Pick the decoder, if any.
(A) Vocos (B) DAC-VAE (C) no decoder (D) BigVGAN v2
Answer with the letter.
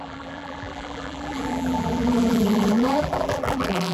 D